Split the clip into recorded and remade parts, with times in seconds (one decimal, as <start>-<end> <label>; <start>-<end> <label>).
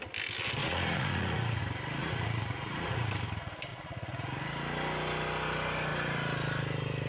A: 0.0-0.6 recorded; 0.6-1.6 remade; 1.6-2.0 recorded; 2.0-3.1 remade; 3.1-3.7 recorded; 3.7-4.4 remade; 4.4-7.1 recorded